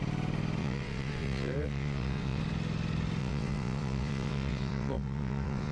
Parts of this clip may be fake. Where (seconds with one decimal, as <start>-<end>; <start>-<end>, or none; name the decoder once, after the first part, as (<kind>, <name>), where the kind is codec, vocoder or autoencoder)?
0.6-2.4 (vocoder, WaveNeXt); 3.2-5.7